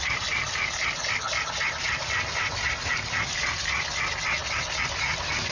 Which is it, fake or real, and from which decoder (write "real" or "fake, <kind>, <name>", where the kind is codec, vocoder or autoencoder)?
real